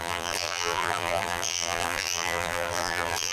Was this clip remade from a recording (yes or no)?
yes